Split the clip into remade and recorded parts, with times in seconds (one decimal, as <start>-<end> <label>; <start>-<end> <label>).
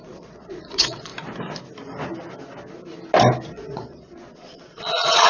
0.0-1.1 remade; 1.1-3.5 recorded; 3.5-5.3 remade